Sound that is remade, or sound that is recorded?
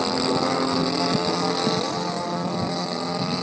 recorded